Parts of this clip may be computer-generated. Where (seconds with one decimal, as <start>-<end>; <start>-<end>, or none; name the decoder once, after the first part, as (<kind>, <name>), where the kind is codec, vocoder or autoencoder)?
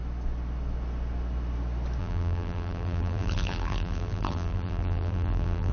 2.0-5.7 (vocoder, BigVGAN v2)